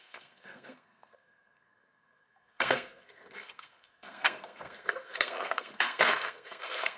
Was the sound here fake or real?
fake